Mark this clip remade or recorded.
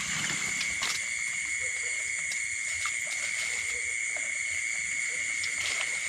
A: recorded